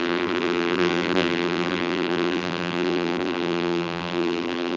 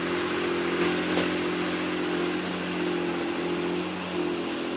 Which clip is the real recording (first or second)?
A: second